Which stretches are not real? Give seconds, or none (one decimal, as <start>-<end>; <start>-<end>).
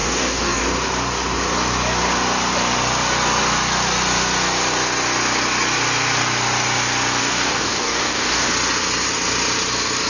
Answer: 0.0-0.6; 7.2-8.5